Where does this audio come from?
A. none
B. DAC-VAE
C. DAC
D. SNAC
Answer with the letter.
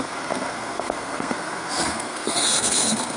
D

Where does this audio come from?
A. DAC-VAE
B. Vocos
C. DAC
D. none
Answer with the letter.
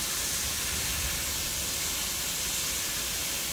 D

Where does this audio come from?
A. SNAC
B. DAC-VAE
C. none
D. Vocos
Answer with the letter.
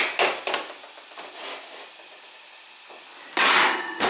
C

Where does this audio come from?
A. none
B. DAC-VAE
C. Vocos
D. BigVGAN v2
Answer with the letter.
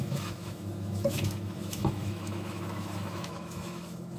B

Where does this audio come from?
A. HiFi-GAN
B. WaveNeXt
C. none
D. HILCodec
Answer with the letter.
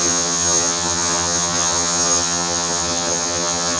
A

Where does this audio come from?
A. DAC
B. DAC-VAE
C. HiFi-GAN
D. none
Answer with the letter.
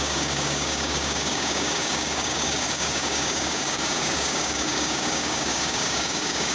A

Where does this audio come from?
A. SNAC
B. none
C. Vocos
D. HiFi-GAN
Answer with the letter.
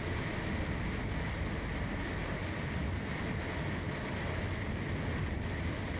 B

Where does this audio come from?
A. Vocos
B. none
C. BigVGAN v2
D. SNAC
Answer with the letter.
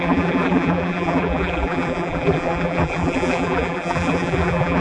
C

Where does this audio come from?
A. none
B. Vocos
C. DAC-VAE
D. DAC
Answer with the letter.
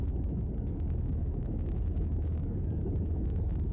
D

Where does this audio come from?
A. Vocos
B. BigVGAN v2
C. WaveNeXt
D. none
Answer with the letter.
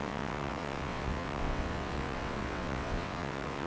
C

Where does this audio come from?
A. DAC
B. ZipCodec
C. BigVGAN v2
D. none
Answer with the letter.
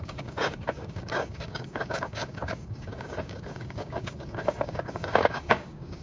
A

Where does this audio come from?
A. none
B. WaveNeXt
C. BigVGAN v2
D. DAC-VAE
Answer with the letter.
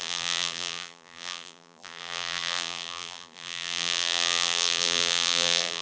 C